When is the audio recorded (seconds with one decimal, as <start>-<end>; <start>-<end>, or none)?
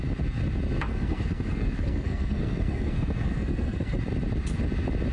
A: 0.0-0.9; 4.0-5.1